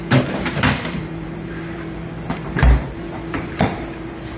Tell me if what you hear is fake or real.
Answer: fake